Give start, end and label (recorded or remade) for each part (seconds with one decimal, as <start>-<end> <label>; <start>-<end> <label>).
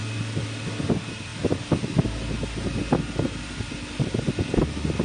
0.0-5.0 recorded